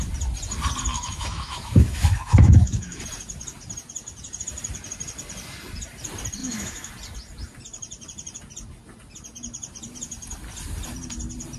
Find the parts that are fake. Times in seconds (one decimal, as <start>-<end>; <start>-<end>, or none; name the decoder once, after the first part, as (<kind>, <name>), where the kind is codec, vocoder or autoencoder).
0.9-3.0 (autoencoder, DAC-VAE); 6.4-6.9